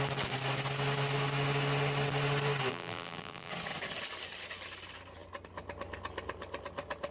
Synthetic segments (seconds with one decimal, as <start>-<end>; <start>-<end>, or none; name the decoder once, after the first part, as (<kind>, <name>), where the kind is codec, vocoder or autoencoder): 2.7-3.5 (vocoder, BigVGAN v2)